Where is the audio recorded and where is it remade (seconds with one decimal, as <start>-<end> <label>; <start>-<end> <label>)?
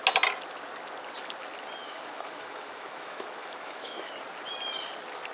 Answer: 0.0-1.8 recorded; 1.8-4.1 remade; 4.1-5.3 recorded